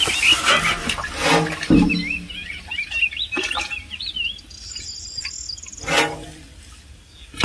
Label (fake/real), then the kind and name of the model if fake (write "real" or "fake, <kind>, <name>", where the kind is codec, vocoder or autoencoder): real